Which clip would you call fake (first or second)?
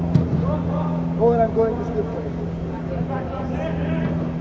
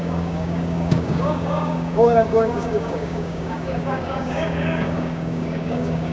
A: second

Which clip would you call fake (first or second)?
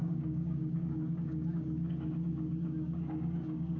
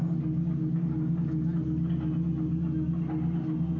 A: first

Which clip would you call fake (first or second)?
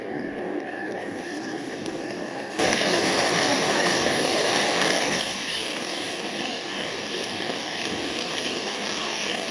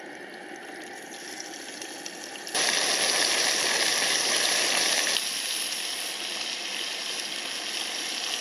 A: first